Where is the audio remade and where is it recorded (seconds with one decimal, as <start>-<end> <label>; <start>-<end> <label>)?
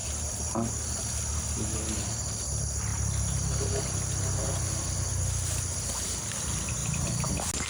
0.0-0.7 remade; 0.7-6.8 recorded; 6.8-7.3 remade; 7.3-7.7 recorded